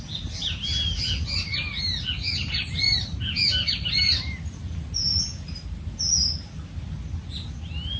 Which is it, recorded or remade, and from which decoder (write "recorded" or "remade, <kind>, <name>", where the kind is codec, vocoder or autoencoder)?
recorded